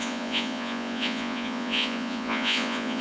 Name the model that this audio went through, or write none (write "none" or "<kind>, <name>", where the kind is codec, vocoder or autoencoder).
vocoder, Vocos